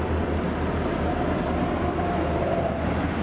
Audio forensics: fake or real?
real